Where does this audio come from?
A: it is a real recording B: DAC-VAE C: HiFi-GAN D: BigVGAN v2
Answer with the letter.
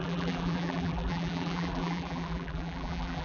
D